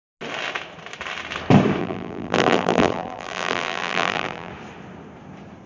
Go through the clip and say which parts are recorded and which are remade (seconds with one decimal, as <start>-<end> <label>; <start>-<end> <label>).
0.0-1.8 recorded; 1.8-4.5 remade; 4.5-5.7 recorded